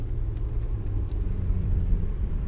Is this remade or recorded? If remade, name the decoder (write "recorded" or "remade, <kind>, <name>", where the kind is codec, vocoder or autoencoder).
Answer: recorded